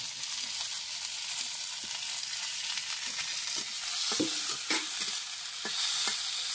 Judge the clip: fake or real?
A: real